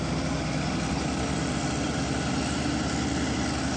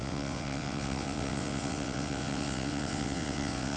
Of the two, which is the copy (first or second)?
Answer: second